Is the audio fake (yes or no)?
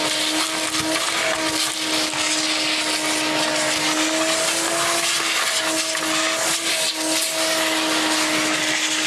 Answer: no